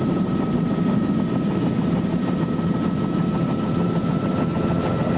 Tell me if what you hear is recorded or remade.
recorded